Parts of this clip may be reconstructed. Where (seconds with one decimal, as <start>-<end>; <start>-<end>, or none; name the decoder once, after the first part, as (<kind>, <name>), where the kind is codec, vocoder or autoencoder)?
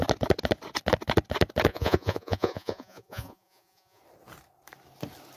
1.7-4.0 (vocoder, Vocos)